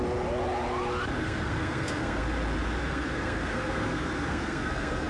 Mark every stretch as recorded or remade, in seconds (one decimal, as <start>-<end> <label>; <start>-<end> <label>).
0.0-1.2 recorded; 1.2-2.2 remade; 2.2-2.9 recorded; 2.9-5.1 remade